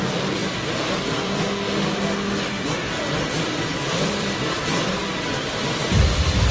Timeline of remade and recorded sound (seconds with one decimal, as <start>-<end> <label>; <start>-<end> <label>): 0.0-3.7 recorded; 3.7-5.0 remade; 5.0-5.8 recorded; 5.8-6.5 remade